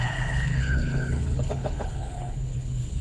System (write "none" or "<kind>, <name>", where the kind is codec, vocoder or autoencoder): codec, HILCodec